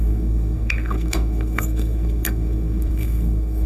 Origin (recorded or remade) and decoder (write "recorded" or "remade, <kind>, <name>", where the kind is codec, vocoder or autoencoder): remade, codec, SNAC